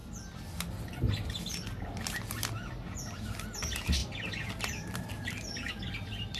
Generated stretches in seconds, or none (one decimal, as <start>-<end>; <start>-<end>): none